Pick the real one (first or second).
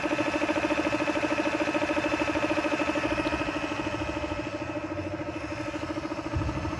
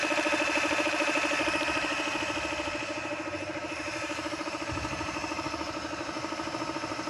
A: first